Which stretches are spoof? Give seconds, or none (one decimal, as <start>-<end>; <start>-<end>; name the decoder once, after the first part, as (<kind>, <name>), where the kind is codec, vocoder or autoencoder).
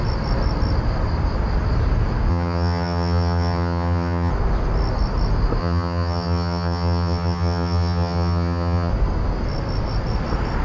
2.3-4.3 (vocoder, HiFi-GAN); 5.6-8.9